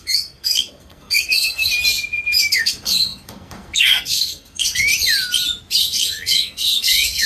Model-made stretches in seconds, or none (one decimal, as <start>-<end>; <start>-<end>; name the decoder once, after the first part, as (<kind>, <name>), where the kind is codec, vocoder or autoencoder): 0.0-1.7 (codec, SNAC); 2.5-4.9; 5.8-7.3